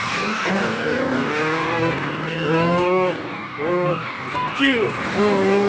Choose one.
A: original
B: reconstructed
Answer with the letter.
B